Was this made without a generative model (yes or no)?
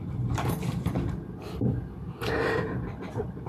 no